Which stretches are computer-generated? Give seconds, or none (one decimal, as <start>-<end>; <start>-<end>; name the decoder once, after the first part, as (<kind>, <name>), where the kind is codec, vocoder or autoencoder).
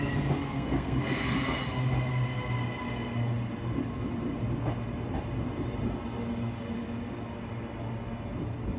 0.4-1.0 (codec, SNAC)